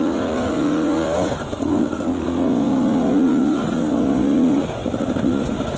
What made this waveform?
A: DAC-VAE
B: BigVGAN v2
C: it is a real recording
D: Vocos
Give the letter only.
D